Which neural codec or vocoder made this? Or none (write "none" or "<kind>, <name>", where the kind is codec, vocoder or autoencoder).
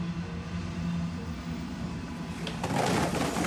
none